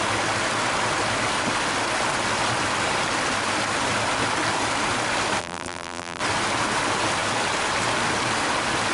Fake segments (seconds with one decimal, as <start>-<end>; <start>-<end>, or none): 5.4-6.2